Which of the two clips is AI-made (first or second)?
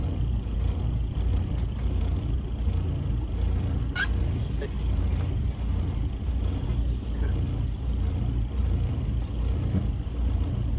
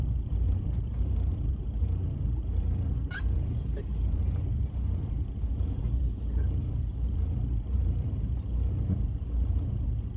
second